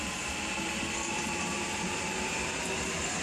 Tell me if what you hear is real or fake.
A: real